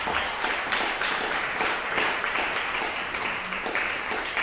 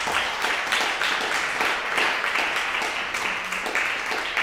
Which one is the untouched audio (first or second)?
second